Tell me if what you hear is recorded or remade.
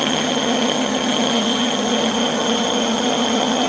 remade